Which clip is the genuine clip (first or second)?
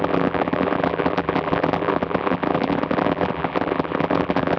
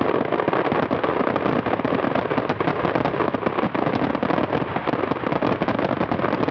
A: second